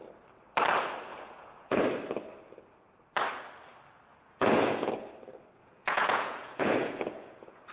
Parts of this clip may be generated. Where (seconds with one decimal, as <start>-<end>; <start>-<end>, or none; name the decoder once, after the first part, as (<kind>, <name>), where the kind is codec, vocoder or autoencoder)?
1.1-1.8 (vocoder, Vocos); 4.1-4.9; 5.6-7.7